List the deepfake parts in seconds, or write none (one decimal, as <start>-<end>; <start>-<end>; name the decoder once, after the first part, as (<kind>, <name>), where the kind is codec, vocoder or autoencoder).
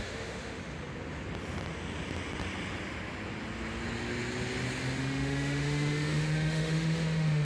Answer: 0.0-0.6 (autoencoder, DAC-VAE); 5.0-7.4